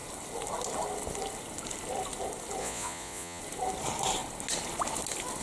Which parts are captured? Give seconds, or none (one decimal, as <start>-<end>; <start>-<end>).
0.0-2.6; 3.4-5.4